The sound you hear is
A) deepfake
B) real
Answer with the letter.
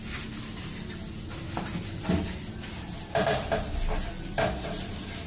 B